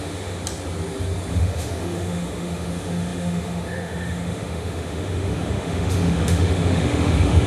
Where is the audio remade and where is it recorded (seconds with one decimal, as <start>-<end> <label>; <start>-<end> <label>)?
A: 0.0-0.4 remade; 0.4-1.3 recorded; 1.3-7.5 remade